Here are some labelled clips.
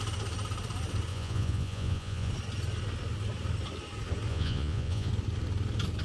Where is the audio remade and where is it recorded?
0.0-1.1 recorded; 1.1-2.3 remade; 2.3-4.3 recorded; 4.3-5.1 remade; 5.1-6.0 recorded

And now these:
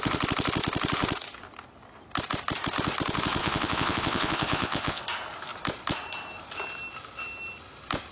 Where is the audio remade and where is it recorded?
0.0-3.4 recorded; 3.4-5.0 remade; 5.0-8.1 recorded

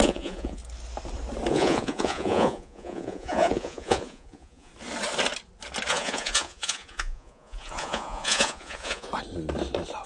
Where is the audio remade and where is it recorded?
0.0-0.6 remade; 0.6-1.5 recorded; 1.5-4.7 remade; 4.7-5.9 recorded; 5.9-9.1 remade; 9.1-10.1 recorded

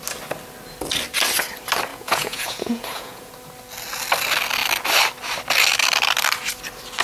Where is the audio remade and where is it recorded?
0.0-1.9 recorded; 1.9-3.3 remade; 3.3-7.0 recorded